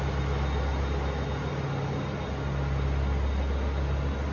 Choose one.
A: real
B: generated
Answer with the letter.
A